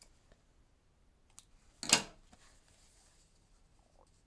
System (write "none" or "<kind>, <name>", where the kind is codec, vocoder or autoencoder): none